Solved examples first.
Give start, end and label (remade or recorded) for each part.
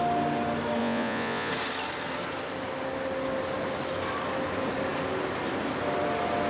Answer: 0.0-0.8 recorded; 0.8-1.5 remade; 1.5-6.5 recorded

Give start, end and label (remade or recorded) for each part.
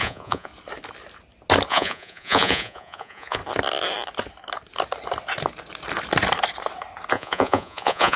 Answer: 0.0-0.5 remade; 0.5-1.7 recorded; 1.7-3.4 remade; 3.4-7.1 recorded; 7.1-8.2 remade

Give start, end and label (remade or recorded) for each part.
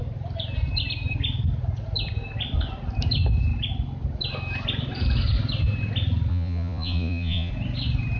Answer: 0.0-6.3 recorded; 6.3-7.5 remade; 7.5-8.2 recorded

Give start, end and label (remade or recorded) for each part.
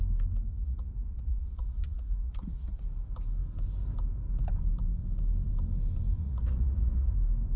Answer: 0.0-0.5 recorded; 0.5-2.8 remade; 2.8-6.2 recorded; 6.2-7.1 remade; 7.1-7.6 recorded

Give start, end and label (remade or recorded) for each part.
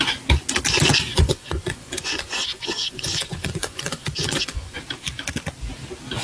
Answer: 0.0-1.1 recorded; 1.1-4.8 remade; 4.8-6.2 recorded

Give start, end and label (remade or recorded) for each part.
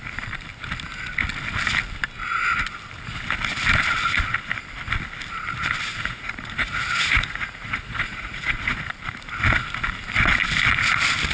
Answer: 0.0-5.9 recorded; 5.9-8.8 remade; 8.8-11.3 recorded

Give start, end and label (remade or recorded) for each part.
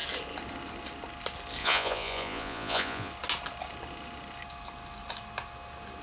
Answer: 0.0-1.6 recorded; 1.6-3.1 remade; 3.1-6.0 recorded